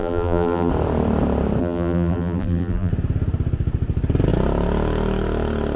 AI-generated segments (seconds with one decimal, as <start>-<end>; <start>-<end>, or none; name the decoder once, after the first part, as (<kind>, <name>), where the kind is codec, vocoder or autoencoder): 0.0-0.7 (vocoder, BigVGAN v2); 1.6-2.9